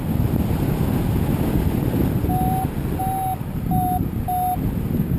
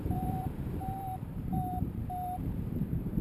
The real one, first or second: first